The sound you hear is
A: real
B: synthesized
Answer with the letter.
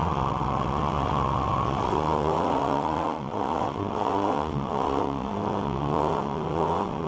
B